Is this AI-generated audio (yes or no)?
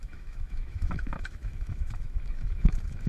yes